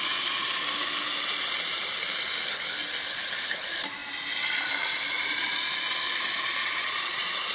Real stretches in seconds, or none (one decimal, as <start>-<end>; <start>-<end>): 0.0-6.6

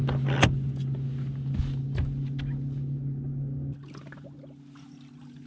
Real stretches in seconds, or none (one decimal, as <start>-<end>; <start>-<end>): 0.0-5.5

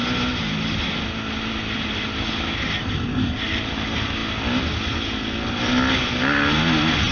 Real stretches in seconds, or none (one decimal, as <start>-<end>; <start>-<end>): 0.0-7.1